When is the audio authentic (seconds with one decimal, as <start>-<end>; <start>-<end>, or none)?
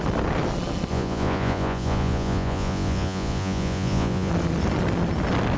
0.0-0.9; 4.3-5.6